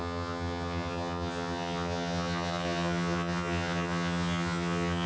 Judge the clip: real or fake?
fake